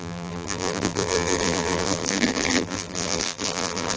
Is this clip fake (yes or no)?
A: yes